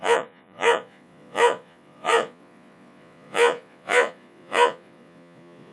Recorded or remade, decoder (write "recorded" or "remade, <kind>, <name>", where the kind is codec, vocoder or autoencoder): remade, vocoder, Vocos